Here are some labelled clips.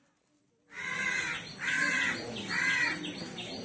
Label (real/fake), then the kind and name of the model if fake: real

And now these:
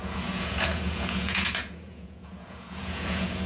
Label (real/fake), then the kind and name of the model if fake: fake, vocoder, Vocos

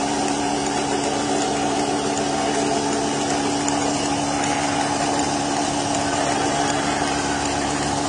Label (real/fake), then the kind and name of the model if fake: real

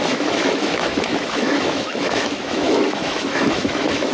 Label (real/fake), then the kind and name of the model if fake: fake, autoencoder, DAC-VAE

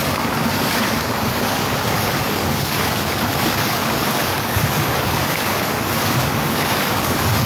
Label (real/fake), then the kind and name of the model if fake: fake, codec, DAC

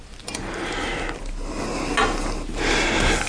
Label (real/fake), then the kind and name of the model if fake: real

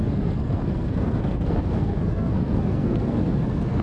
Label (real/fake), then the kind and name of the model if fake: fake, codec, SNAC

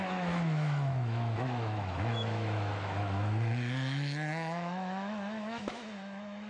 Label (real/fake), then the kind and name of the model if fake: fake, autoencoder, DAC-VAE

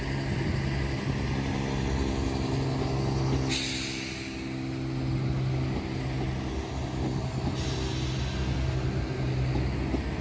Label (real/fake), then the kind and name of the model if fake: real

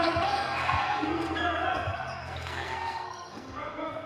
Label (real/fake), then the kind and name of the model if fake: fake, codec, SNAC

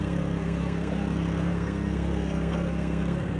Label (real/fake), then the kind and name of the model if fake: fake, codec, SNAC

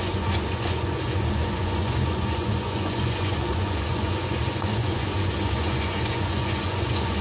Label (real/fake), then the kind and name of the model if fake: fake, vocoder, Vocos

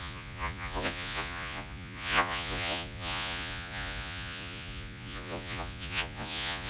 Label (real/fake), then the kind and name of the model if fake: fake, vocoder, Vocos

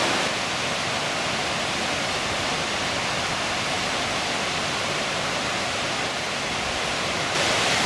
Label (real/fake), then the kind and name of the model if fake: real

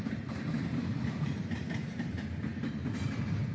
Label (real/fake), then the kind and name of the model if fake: fake, vocoder, BigVGAN v2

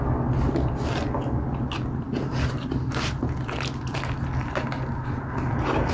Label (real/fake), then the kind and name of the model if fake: real